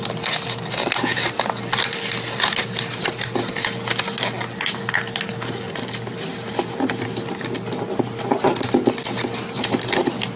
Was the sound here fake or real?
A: real